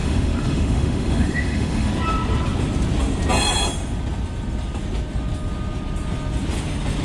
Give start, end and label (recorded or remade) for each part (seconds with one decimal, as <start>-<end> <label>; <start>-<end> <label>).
0.0-1.9 remade; 1.9-7.0 recorded